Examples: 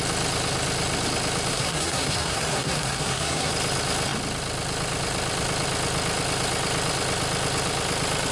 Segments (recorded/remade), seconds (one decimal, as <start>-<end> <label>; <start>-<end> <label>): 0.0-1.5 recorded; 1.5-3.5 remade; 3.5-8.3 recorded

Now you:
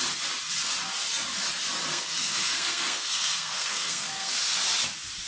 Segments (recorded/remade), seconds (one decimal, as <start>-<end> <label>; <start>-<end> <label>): 0.0-1.9 recorded; 1.9-4.4 remade; 4.4-5.3 recorded

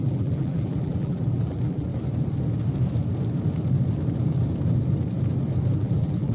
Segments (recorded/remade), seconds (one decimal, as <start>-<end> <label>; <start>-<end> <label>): 0.0-1.9 remade; 1.9-5.7 recorded; 5.7-6.3 remade

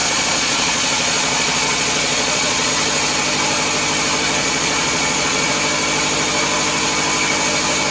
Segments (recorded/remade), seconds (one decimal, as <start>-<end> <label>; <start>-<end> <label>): 0.0-2.7 remade; 2.7-4.4 recorded; 4.4-5.5 remade; 5.5-7.9 recorded